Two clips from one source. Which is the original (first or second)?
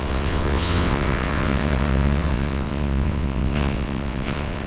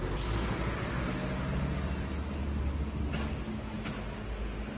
second